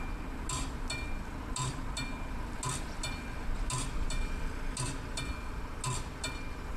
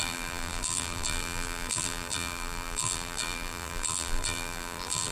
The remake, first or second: second